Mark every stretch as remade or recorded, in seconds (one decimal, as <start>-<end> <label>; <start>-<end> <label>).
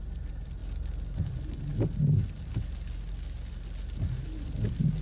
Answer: 0.0-0.6 remade; 0.6-1.2 recorded; 1.2-1.7 remade; 1.7-5.0 recorded